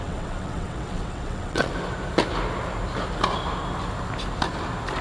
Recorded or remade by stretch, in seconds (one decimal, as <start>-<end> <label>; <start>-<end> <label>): 0.0-1.7 remade; 1.7-5.0 recorded

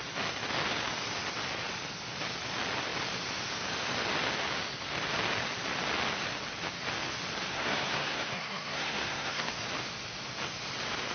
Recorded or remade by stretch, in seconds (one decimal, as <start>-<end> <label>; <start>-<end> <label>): 0.0-7.5 recorded; 7.5-9.5 remade; 9.5-11.1 recorded

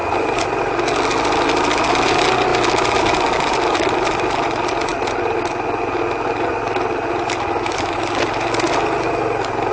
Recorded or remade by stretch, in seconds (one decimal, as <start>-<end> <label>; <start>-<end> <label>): 0.0-9.7 recorded

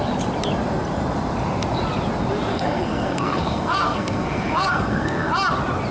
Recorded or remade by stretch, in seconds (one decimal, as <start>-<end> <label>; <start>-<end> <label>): 0.0-2.5 recorded; 2.5-5.3 remade; 5.3-5.9 recorded

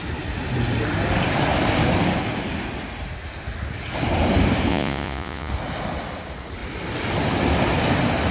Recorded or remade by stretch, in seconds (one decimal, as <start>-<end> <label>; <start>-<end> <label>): 0.0-4.7 recorded; 4.7-5.5 remade; 5.5-8.3 recorded